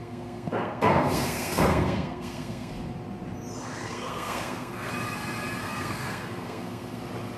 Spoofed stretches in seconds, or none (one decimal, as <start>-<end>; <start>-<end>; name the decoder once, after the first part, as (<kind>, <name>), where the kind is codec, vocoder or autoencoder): 0.0-2.7 (codec, SNAC); 3.6-4.9; 5.6-7.0